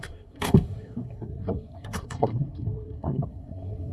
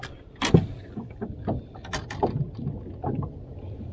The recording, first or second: second